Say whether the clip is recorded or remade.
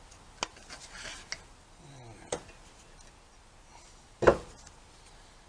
recorded